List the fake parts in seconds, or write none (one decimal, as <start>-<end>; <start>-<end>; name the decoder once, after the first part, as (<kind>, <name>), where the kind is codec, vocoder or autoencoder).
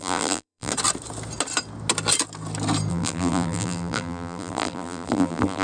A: 0.0-0.7 (vocoder, BigVGAN v2); 2.9-5.6